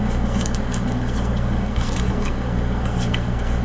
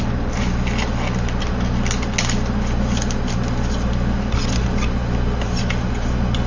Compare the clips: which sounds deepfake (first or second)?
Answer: first